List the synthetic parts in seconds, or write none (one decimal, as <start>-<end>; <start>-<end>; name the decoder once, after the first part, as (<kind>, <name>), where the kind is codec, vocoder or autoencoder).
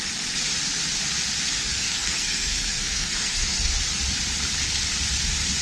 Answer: 1.7-3.8 (codec, SNAC)